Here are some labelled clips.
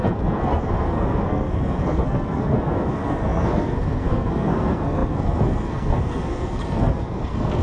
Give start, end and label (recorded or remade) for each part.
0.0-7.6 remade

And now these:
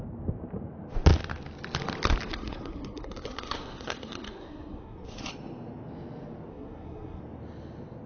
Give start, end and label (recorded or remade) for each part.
0.0-2.3 recorded; 2.3-5.3 remade; 5.3-6.5 recorded; 6.5-7.2 remade; 7.2-8.1 recorded